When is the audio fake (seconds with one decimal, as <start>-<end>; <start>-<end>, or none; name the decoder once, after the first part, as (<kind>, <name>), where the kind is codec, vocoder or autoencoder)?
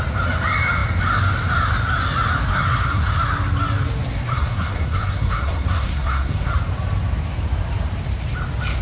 2.5-3.1 (codec, SNAC); 4.3-6.5